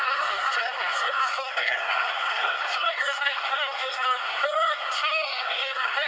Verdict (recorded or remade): remade